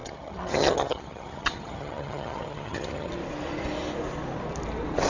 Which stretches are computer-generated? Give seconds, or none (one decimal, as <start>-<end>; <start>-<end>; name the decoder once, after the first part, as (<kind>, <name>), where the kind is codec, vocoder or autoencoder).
0.0-3.1 (vocoder, HiFi-GAN)